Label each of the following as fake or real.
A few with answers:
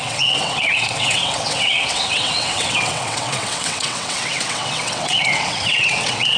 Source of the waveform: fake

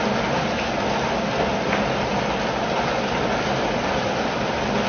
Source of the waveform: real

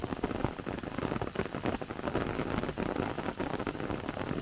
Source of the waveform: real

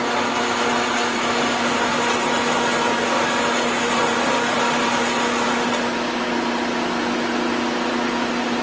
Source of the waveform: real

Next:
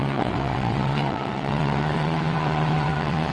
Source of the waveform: fake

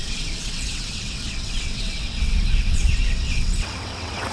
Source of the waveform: fake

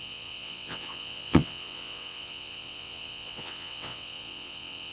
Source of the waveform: fake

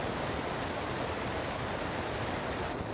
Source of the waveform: real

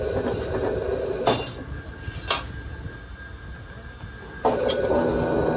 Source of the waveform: real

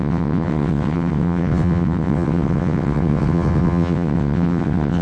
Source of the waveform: fake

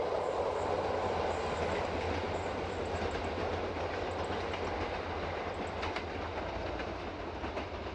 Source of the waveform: real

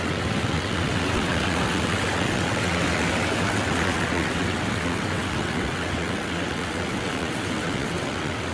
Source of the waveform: fake